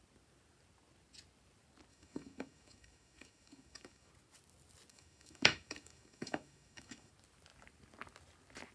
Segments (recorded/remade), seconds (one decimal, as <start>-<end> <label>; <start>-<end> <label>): 0.0-1.9 recorded; 1.9-4.1 remade; 4.1-4.9 recorded; 4.9-7.1 remade; 7.1-8.7 recorded